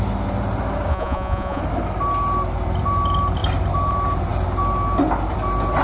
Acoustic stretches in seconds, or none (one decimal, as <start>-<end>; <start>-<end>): 0.0-0.9; 1.6-5.8